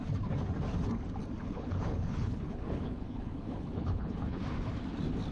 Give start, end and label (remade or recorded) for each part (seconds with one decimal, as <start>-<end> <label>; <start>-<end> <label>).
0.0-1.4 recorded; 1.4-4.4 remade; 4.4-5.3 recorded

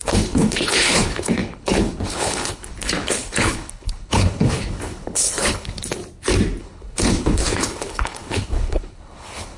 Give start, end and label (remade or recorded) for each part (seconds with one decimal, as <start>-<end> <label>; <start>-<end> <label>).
0.0-6.0 remade; 6.0-6.6 recorded; 6.6-9.6 remade

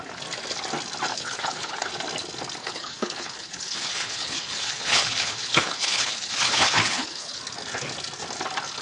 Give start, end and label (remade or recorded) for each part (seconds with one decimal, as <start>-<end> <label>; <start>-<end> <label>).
0.0-1.1 recorded; 1.1-1.9 remade; 1.9-2.6 recorded; 2.6-7.4 remade; 7.4-8.8 recorded